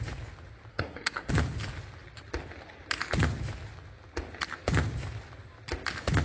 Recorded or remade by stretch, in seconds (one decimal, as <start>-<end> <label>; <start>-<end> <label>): 0.0-0.7 recorded; 0.7-1.3 remade; 1.3-6.2 recorded

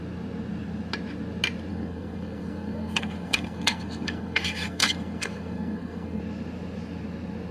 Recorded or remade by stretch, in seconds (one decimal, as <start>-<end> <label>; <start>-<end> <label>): 0.0-1.7 recorded; 1.7-6.2 remade; 6.2-7.5 recorded

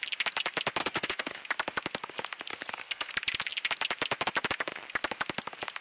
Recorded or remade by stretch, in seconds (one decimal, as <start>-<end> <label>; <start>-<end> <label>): 0.0-0.8 recorded; 0.8-1.4 remade; 1.4-2.5 recorded; 2.5-3.1 remade; 3.1-5.8 recorded

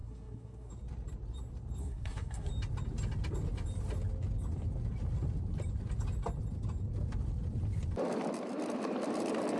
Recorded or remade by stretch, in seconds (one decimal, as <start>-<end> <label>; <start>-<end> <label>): 0.0-0.7 remade; 0.7-1.8 recorded; 1.8-2.5 remade; 2.5-9.6 recorded